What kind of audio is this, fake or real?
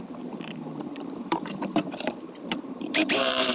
fake